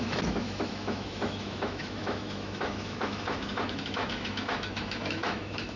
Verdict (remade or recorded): remade